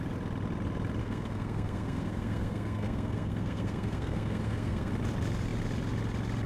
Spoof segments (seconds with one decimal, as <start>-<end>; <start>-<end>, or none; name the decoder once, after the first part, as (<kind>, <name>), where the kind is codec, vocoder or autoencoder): 1.0-4.9 (codec, SNAC)